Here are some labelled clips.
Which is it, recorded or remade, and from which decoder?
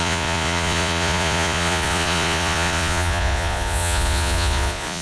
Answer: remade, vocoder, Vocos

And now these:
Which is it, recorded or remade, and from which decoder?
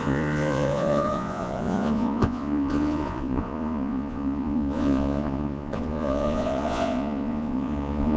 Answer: remade, vocoder, Vocos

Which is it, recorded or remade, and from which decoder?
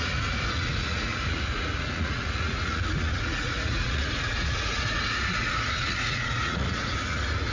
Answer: remade, vocoder, Vocos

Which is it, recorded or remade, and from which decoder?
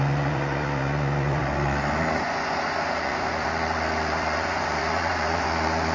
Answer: remade, vocoder, Vocos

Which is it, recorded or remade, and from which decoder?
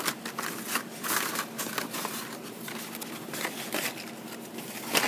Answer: recorded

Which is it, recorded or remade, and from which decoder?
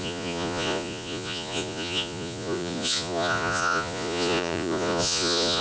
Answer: remade, vocoder, Vocos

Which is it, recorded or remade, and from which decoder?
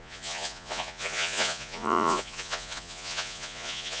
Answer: remade, vocoder, Vocos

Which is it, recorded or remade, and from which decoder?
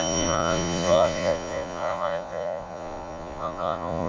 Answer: remade, vocoder, Vocos